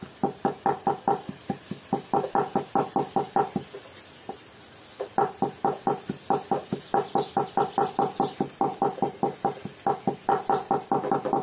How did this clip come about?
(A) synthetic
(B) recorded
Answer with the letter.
B